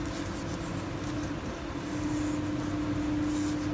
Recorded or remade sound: recorded